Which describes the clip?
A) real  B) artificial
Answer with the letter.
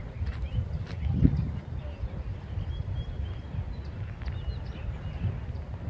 A